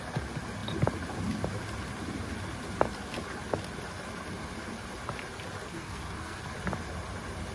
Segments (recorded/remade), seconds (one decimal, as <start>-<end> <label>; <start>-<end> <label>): 0.0-5.7 recorded; 5.7-6.4 remade; 6.4-7.5 recorded

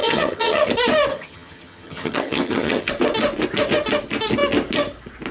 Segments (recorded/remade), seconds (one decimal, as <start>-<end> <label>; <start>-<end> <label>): 0.0-0.7 remade; 0.7-1.1 recorded; 1.1-2.9 remade; 2.9-5.3 recorded

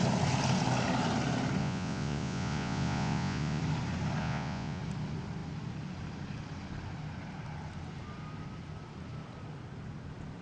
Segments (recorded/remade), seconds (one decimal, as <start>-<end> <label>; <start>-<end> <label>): 0.0-1.6 recorded; 1.6-3.6 remade; 3.6-4.2 recorded; 4.2-4.8 remade; 4.8-10.4 recorded

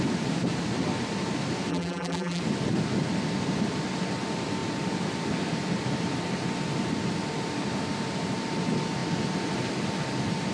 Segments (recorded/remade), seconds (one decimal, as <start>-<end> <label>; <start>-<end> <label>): 0.0-1.7 recorded; 1.7-2.4 remade; 2.4-10.5 recorded